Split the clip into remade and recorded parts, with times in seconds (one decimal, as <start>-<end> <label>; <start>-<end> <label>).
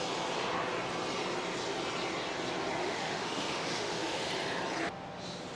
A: 0.0-2.8 recorded; 2.8-4.3 remade; 4.3-5.6 recorded